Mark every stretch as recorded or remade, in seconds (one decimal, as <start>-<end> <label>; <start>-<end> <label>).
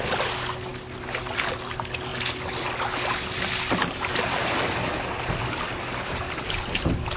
0.0-7.2 recorded